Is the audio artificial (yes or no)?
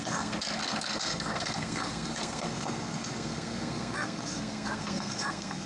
yes